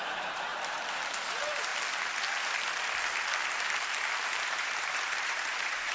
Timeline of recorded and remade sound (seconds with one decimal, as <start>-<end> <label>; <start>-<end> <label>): 0.0-0.5 remade; 0.5-1.1 recorded; 1.1-1.7 remade; 1.7-4.3 recorded; 4.3-5.9 remade